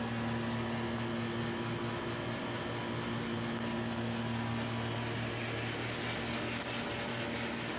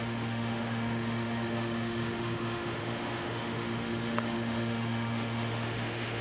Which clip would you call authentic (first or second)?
first